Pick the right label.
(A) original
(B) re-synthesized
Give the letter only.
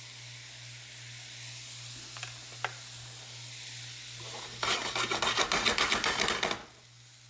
A